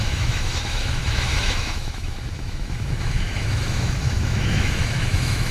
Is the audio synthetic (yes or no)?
yes